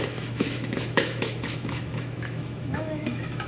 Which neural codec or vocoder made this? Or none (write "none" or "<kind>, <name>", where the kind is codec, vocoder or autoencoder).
autoencoder, DAC-VAE